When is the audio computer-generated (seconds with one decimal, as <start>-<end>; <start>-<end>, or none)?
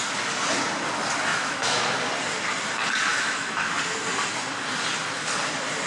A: 1.3-1.8; 3.1-3.7